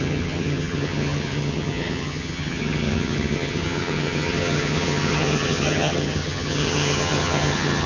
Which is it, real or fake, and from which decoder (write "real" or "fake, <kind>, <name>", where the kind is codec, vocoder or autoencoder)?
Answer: fake, vocoder, HiFi-GAN